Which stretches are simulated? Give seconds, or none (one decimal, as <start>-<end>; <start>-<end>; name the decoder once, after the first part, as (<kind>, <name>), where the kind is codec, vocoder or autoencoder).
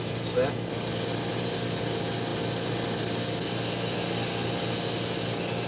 none